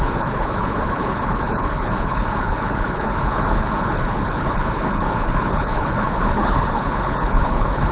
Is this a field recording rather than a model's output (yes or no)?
no